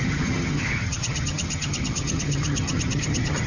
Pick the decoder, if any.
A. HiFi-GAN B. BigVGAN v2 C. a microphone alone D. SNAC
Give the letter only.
A